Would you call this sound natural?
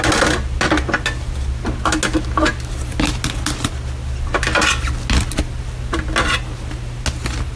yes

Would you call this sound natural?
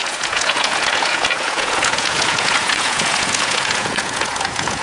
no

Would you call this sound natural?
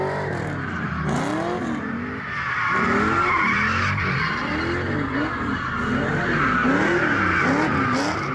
yes